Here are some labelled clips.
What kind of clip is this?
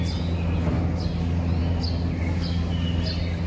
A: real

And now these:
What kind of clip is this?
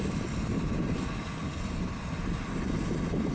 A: real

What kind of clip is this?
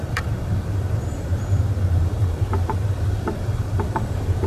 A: fake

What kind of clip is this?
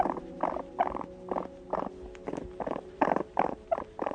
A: real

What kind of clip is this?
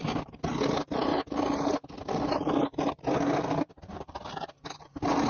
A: real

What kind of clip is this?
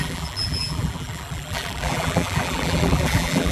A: fake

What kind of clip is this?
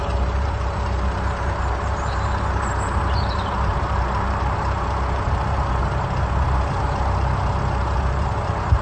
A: fake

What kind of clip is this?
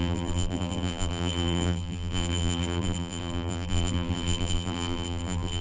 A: fake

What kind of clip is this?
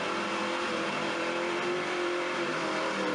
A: fake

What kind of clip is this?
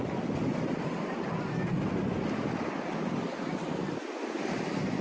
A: fake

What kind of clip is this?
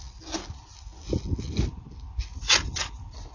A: real